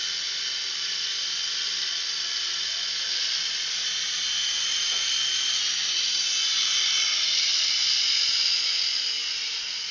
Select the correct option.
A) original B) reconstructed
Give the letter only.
A